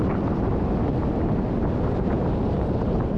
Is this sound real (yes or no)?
no